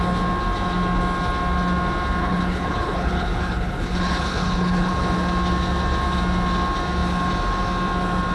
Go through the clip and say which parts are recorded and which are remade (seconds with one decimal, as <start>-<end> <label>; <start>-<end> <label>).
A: 0.0-2.2 recorded; 2.2-4.9 remade; 4.9-8.3 recorded